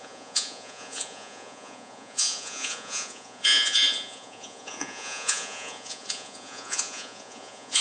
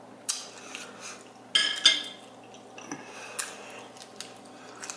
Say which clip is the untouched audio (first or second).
second